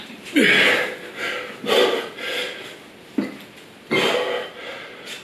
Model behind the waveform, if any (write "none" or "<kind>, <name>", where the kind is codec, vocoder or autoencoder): none